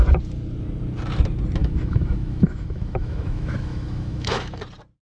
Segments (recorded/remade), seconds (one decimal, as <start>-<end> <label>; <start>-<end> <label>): 0.0-1.6 recorded; 1.6-4.6 remade; 4.6-5.1 recorded

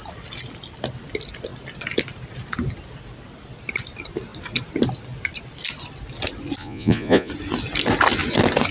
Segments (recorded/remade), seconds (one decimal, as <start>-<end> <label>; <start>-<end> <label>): 0.0-6.6 recorded; 6.6-7.3 remade; 7.3-8.7 recorded

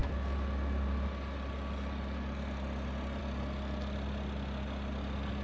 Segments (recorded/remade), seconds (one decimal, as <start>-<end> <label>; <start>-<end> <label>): 0.0-5.4 recorded

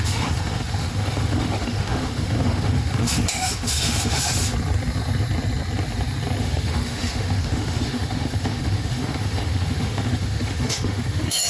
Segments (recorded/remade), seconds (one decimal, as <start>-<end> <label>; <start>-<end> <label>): 0.0-4.5 remade; 4.5-6.4 recorded; 6.4-11.5 remade